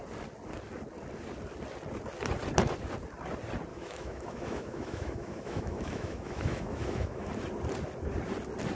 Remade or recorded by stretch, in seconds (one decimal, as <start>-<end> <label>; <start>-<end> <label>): 0.0-3.7 recorded; 3.7-7.3 remade; 7.3-8.7 recorded